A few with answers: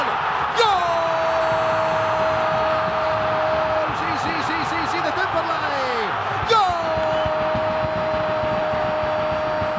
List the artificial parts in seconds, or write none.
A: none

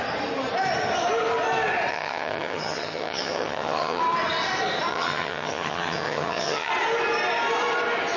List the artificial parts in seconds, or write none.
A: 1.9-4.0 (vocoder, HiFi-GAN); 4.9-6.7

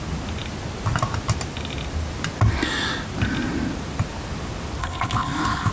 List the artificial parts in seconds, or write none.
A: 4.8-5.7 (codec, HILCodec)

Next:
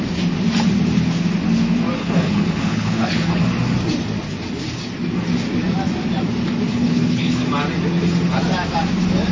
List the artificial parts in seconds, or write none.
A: 2.0-3.4 (codec, HILCodec); 6.7-7.4